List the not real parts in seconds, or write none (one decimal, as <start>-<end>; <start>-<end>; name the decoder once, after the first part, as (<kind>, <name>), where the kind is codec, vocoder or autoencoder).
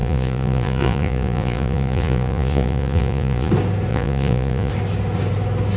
0.0-3.5 (vocoder, Vocos); 3.9-4.7